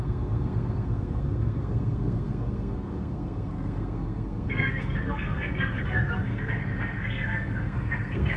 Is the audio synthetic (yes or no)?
yes